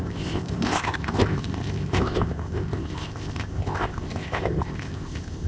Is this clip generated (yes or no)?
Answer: yes